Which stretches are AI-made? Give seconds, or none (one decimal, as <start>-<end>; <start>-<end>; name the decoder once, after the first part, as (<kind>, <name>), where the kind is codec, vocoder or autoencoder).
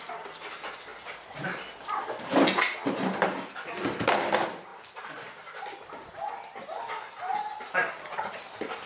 none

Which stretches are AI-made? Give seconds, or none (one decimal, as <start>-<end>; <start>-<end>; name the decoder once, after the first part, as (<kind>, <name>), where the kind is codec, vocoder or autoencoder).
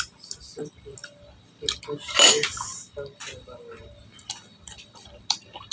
none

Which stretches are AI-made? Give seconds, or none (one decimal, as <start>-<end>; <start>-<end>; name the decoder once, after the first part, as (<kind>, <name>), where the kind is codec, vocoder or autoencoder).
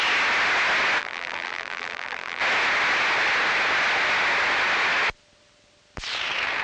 1.0-2.4 (vocoder, BigVGAN v2)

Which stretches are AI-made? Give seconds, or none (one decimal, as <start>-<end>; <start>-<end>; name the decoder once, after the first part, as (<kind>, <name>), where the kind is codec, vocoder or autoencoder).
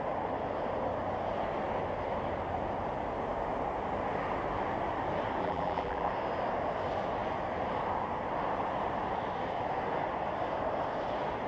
5.4-6.1 (vocoder, BigVGAN v2)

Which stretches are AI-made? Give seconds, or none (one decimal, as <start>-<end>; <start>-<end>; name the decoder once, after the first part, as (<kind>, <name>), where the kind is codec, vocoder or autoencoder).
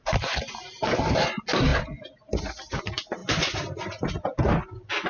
1.7-2.4 (vocoder, BigVGAN v2)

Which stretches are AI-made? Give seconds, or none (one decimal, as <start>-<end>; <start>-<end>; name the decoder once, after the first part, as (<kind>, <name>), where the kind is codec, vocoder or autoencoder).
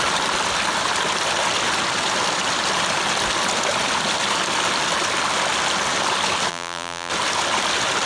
6.5-7.1 (vocoder, BigVGAN v2)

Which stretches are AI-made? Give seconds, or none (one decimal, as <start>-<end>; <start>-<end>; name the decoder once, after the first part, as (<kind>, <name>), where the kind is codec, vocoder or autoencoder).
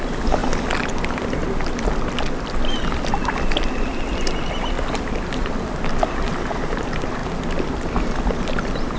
0.0-0.4 (vocoder, BigVGAN v2); 4.5-7.2; 8.2-9.0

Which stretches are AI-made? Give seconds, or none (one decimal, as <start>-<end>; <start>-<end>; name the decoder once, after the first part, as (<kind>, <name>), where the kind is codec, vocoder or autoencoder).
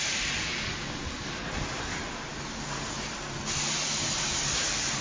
0.0-0.5 (vocoder, BigVGAN v2); 3.5-5.0